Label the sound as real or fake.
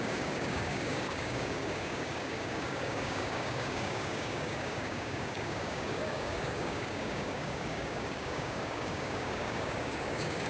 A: fake